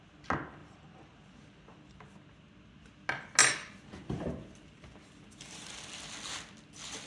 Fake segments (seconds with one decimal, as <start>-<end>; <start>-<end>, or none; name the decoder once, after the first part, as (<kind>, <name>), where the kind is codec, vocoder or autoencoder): 0.6-2.0 (vocoder, BigVGAN v2); 3.4-5.4